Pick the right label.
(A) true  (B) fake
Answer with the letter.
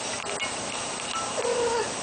A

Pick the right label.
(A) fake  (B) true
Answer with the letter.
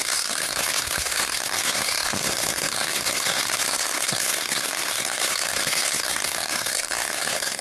A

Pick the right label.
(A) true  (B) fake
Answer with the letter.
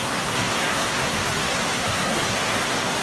B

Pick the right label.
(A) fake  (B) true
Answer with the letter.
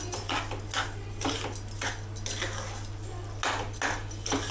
B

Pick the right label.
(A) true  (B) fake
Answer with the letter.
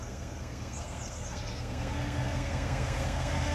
B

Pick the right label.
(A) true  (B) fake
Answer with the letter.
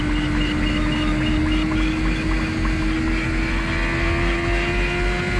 A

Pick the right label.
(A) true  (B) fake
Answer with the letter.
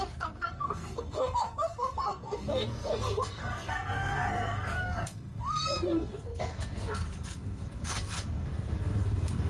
B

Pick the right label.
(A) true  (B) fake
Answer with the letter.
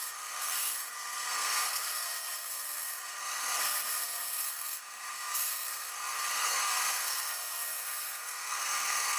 B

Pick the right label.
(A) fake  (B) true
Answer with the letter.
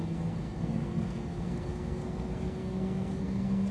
A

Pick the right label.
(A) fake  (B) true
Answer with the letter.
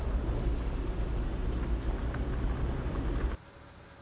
B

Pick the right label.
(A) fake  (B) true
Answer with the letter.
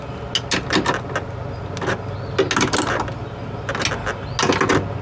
B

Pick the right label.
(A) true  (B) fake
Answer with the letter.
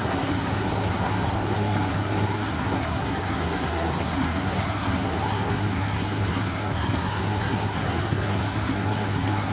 B